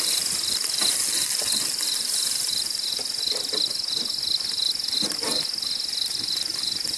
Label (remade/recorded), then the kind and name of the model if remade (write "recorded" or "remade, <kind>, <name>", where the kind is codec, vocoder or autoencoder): recorded